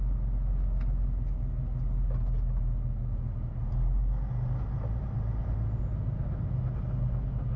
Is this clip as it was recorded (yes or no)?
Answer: yes